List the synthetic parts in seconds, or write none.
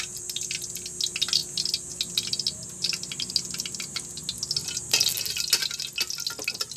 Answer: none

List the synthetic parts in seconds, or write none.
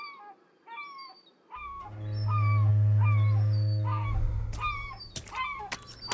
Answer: none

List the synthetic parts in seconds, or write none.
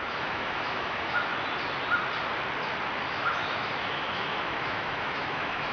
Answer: 0.0-1.3 (autoencoder, DAC-VAE); 3.1-5.7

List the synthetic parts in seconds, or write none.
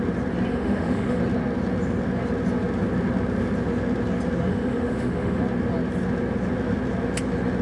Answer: 0.5-1.2 (autoencoder, DAC-VAE); 4.5-5.4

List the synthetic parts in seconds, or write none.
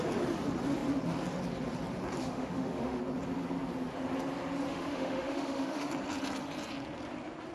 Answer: 2.2-3.0 (autoencoder, DAC-VAE); 4.7-5.9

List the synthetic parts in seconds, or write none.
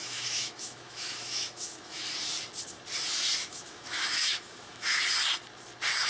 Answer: 0.0-2.0 (autoencoder, DAC-VAE); 3.4-5.0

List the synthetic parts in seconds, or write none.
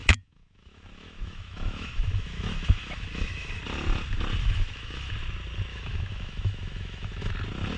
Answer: 0.0-3.6 (autoencoder, DAC-VAE); 4.4-5.1; 5.7-7.3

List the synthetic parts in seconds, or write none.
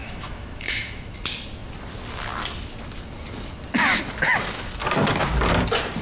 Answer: 0.0-1.2 (autoencoder, DAC-VAE)